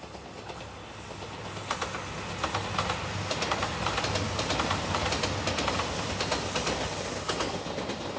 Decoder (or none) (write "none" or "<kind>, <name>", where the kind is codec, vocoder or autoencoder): none